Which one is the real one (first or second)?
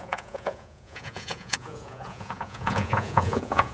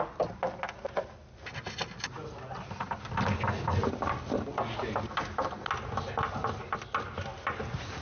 second